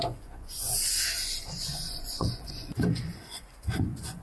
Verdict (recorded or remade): remade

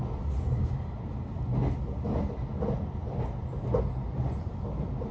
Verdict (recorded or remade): recorded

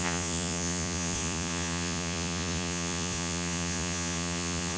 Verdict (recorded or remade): remade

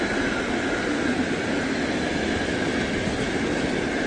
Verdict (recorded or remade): recorded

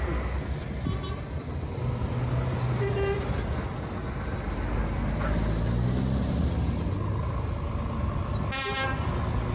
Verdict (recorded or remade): recorded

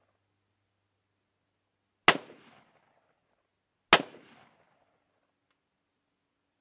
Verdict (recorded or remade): recorded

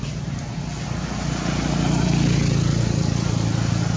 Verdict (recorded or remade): recorded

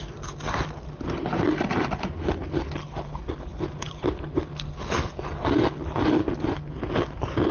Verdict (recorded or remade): recorded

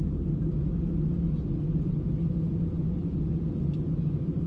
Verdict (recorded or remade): recorded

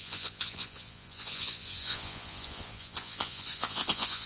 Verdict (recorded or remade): remade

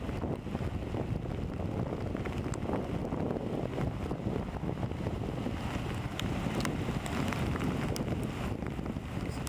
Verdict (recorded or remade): recorded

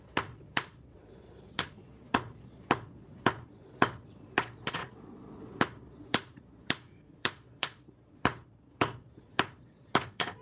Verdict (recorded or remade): remade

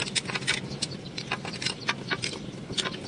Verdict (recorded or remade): recorded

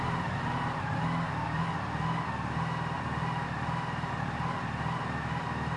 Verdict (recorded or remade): recorded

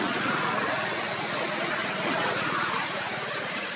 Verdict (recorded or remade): remade